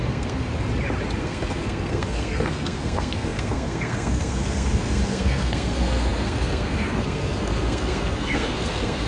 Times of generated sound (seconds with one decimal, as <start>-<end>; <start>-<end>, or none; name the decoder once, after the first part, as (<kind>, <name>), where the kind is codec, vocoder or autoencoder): 0.0-0.5 (codec, SNAC); 1.2-9.1